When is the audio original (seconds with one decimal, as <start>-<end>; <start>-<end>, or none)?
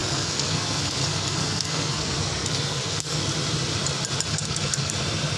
3.2-4.3; 4.9-5.4